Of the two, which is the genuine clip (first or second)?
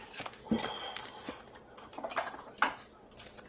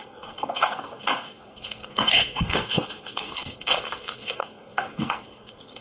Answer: first